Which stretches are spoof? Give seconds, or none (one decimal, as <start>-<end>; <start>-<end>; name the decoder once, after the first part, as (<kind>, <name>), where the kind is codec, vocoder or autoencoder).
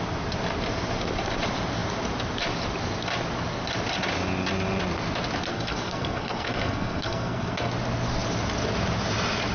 5.5-7.7 (codec, SNAC)